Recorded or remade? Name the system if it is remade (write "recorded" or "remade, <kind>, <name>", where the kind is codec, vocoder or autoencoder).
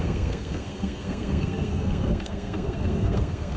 remade, codec, SNAC